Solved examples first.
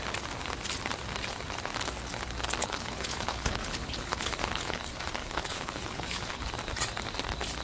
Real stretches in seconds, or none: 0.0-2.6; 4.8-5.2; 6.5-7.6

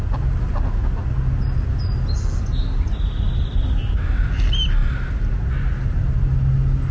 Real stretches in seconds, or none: 0.0-6.9

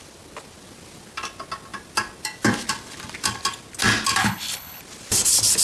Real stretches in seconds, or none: 0.0-4.2; 4.8-5.6

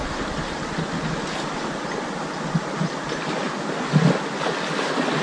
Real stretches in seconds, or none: 0.0-5.2

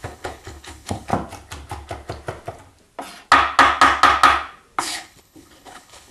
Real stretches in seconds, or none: 1.1-4.8